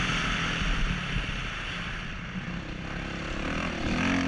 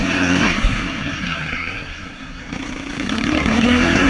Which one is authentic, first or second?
first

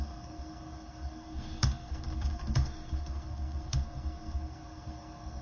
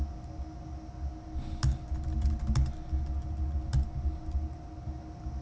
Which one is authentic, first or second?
second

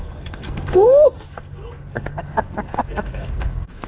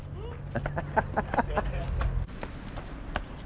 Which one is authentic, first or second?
second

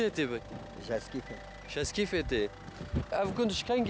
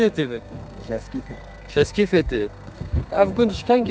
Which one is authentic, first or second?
first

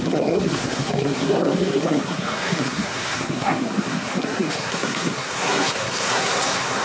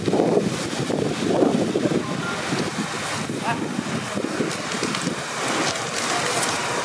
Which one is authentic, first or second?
second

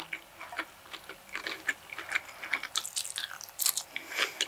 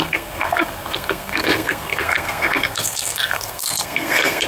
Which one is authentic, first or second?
first